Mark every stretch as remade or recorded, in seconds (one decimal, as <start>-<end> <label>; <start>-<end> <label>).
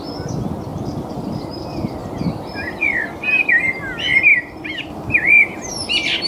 0.0-0.7 recorded; 0.7-1.6 remade; 1.6-2.0 recorded; 2.0-3.5 remade; 3.5-6.3 recorded